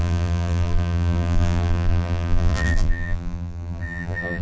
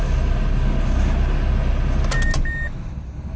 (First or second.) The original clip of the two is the second